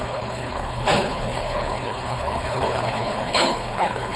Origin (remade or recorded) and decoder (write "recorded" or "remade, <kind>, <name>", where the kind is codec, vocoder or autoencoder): remade, codec, HILCodec